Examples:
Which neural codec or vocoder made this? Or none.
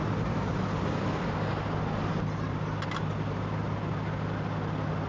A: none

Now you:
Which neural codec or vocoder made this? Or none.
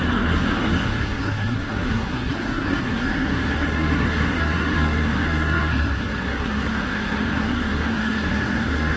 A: codec, SNAC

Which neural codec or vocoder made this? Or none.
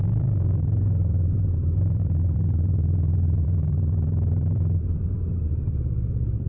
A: vocoder, BigVGAN v2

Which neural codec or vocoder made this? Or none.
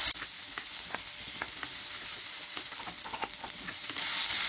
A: none